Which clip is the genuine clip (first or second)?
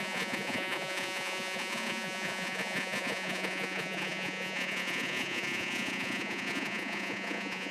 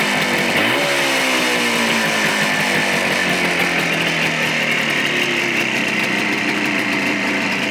second